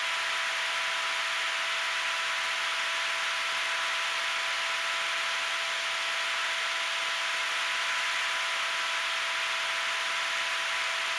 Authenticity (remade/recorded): recorded